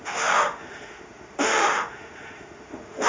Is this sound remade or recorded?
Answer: remade